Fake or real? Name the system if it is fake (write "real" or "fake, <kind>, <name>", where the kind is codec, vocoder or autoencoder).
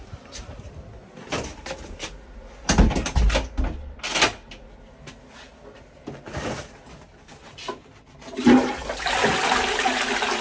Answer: real